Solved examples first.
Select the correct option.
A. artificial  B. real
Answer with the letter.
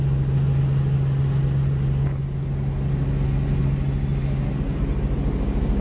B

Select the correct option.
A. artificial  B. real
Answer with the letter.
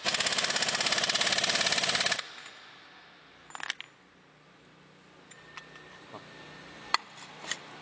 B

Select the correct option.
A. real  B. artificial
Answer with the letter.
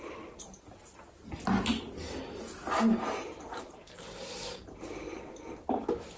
A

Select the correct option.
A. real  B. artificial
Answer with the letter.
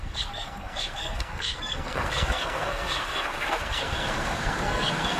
B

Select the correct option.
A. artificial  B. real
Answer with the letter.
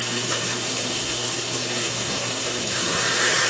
A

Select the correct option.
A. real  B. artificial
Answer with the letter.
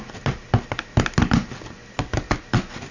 A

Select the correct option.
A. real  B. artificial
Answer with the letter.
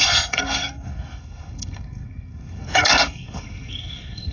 B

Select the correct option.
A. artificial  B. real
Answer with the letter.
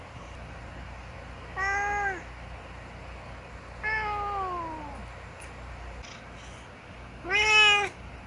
B